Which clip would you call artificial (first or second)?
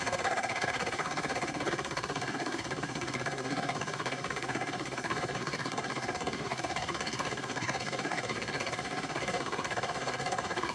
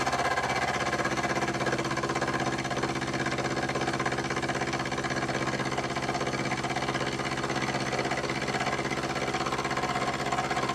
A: first